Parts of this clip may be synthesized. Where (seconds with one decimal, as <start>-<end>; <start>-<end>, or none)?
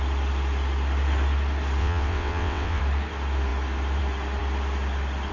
1.8-2.8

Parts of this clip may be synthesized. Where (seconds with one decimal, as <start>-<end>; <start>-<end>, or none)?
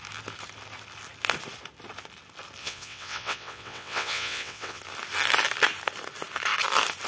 2.6-4.8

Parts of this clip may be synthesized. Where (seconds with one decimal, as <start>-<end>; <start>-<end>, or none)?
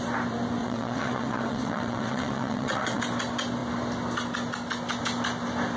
0.6-3.0